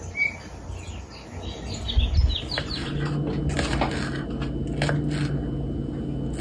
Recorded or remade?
recorded